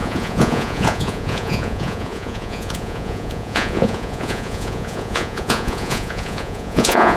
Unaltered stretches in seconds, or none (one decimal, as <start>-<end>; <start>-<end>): none

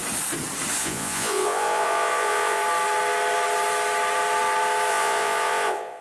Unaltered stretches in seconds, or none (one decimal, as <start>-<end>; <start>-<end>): 0.0-0.8; 2.6-4.9

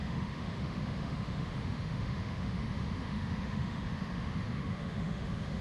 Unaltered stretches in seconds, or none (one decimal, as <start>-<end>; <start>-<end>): none

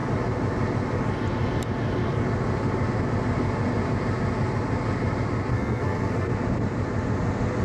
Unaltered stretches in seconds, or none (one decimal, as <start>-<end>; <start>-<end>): 0.0-5.5; 6.3-7.6

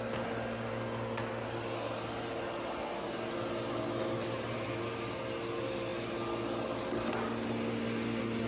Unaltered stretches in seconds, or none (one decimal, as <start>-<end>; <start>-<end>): 0.0-8.5

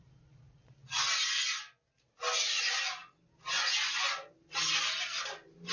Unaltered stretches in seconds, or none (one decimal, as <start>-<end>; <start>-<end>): 0.0-5.7